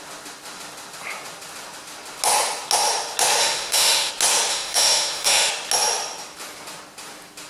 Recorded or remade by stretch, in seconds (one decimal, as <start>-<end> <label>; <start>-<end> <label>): 0.0-3.4 recorded; 3.4-4.1 remade; 4.1-4.5 recorded; 4.5-5.5 remade; 5.5-7.5 recorded